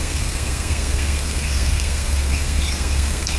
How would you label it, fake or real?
fake